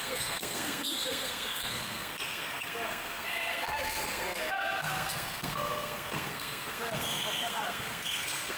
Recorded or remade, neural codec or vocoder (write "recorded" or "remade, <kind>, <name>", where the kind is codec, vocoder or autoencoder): remade, codec, SNAC